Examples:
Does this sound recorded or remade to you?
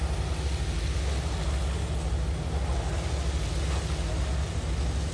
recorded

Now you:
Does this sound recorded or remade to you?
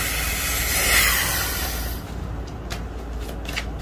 recorded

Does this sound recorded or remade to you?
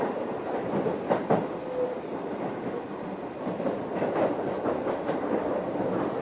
recorded